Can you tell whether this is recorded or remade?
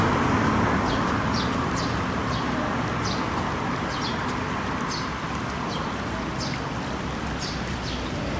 recorded